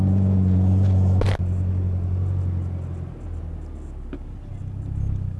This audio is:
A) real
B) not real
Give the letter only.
A